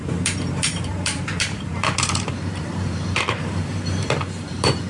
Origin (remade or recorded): remade